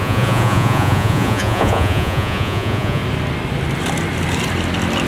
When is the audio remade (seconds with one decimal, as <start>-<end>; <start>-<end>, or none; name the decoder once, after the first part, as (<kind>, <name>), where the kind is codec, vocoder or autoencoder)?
0.0-3.0 (vocoder, Vocos)